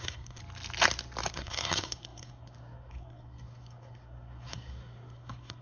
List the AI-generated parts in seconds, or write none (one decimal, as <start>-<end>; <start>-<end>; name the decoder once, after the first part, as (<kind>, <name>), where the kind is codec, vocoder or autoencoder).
0.0-0.4 (codec, SNAC); 1.3-5.6

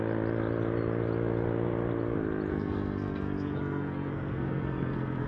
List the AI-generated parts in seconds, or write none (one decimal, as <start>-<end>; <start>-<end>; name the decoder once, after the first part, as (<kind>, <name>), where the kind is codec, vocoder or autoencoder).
2.5-5.3 (codec, SNAC)

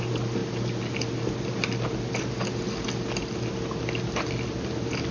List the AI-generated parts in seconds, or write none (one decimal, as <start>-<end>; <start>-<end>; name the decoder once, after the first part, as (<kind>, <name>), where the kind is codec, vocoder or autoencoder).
none

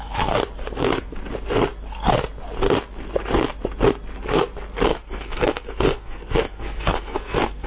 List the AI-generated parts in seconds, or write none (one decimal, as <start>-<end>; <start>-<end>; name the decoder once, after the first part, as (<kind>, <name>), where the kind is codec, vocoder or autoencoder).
4.9-7.7 (codec, SNAC)